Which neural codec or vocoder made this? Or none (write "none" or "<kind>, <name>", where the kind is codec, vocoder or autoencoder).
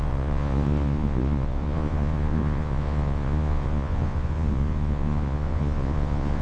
vocoder, Vocos